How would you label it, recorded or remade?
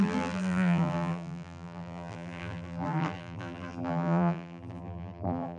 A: remade